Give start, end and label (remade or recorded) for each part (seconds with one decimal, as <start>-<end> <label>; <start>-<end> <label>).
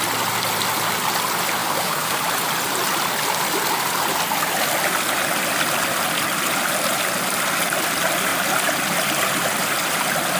0.0-1.6 recorded; 1.6-2.2 remade; 2.2-10.4 recorded